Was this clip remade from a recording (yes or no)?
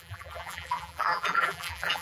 yes